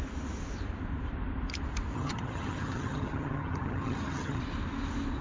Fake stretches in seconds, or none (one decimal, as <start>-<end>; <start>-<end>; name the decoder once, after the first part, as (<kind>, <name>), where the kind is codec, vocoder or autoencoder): 1.9-4.4 (vocoder, HiFi-GAN)